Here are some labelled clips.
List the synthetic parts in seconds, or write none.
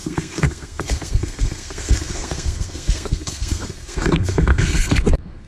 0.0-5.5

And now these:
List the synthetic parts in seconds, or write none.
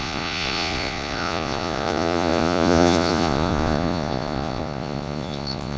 0.0-5.8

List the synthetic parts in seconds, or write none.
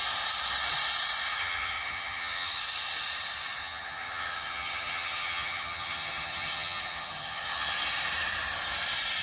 1.4-2.6; 3.6-7.8